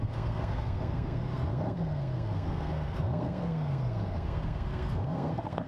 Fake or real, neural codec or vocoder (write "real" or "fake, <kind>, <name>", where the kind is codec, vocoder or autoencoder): fake, codec, SNAC